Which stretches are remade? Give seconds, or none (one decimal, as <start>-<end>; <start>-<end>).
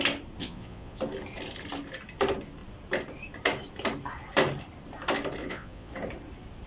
0.4-1.0; 5.4-5.9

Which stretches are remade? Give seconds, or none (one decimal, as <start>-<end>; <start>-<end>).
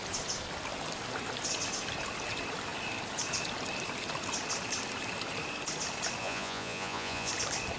6.2-7.3